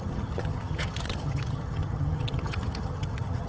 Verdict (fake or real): fake